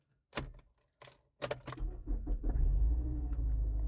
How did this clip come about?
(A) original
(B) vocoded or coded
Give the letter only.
A